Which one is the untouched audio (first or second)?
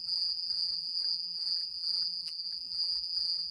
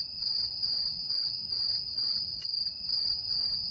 second